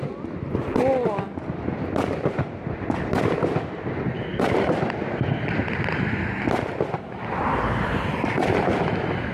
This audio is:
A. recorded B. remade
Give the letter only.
A